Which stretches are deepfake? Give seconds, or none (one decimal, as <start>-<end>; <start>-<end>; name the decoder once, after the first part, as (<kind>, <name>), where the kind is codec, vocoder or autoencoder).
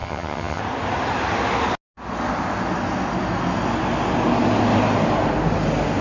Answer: 0.0-0.6 (vocoder, HiFi-GAN)